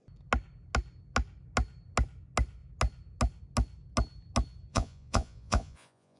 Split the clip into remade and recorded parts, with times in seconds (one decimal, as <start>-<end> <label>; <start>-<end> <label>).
0.0-4.7 recorded; 4.7-6.2 remade